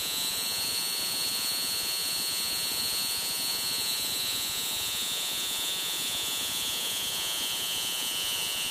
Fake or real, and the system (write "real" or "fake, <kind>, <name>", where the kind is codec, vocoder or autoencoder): fake, vocoder, Vocos